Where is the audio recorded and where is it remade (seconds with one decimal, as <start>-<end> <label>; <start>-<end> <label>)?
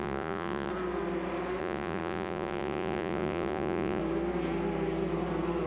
0.0-0.7 remade; 0.7-1.6 recorded; 1.6-4.0 remade; 4.0-5.7 recorded